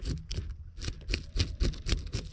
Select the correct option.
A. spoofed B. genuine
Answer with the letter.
B